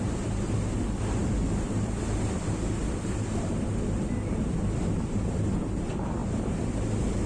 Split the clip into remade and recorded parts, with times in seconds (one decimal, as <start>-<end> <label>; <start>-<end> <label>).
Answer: 0.0-1.2 recorded; 1.2-3.6 remade; 3.6-6.2 recorded; 6.2-6.8 remade; 6.8-7.3 recorded